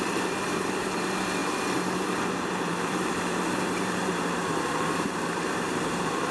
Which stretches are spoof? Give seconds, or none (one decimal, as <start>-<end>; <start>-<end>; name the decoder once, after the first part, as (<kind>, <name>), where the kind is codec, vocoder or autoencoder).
0.0-6.3 (vocoder, BigVGAN v2)